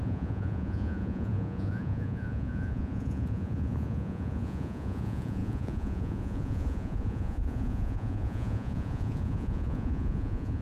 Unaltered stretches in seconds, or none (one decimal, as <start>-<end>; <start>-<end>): none